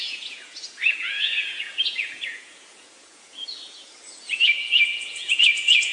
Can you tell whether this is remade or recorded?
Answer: remade